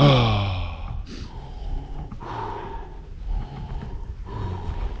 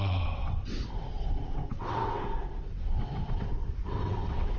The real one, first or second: first